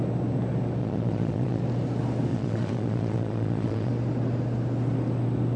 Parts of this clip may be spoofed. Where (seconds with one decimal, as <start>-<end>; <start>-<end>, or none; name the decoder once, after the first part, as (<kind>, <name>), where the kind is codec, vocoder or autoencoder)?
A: 0.8-1.6 (vocoder, Vocos); 2.3-3.9